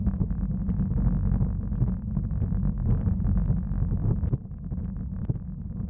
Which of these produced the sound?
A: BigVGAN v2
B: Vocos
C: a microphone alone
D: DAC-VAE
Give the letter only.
C